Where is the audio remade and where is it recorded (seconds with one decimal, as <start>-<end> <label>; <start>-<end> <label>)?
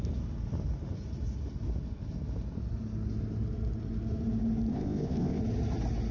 0.0-4.7 recorded; 4.7-5.4 remade; 5.4-6.1 recorded